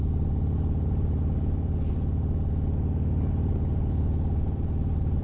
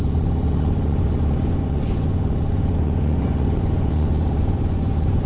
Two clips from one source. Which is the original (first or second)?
first